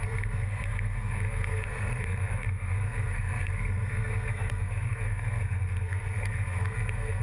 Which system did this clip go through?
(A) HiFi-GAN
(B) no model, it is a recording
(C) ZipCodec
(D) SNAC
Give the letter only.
D